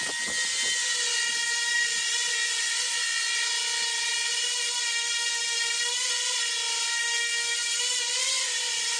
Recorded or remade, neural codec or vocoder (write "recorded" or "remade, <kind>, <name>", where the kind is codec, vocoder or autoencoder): recorded